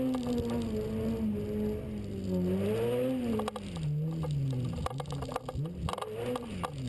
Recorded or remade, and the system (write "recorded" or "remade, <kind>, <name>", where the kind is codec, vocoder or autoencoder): recorded